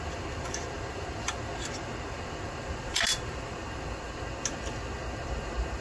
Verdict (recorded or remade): recorded